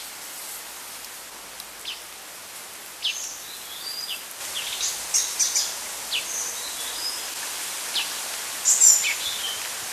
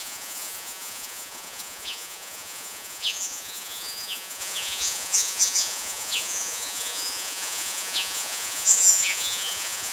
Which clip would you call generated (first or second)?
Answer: second